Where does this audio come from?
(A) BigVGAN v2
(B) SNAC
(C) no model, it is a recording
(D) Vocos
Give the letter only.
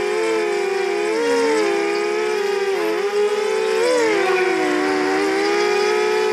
C